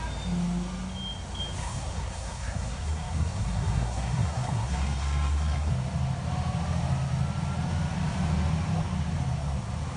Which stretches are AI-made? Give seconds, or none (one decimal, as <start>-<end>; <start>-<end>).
1.6-5.7